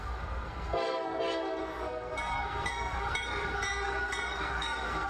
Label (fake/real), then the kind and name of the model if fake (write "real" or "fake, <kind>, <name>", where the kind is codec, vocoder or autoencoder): fake, codec, SNAC